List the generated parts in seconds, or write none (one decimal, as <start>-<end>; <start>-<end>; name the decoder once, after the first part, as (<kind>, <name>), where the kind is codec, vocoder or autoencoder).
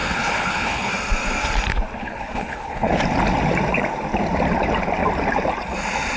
0.0-0.9 (codec, HILCodec); 2.0-2.9